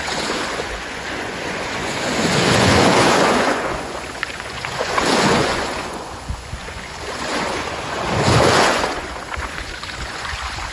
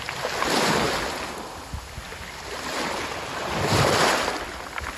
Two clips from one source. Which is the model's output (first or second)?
first